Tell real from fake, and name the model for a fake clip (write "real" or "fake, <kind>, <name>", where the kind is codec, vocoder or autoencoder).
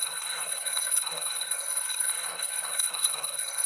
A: fake, codec, SNAC